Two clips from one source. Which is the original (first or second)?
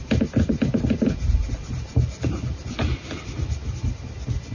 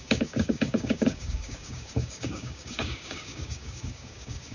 first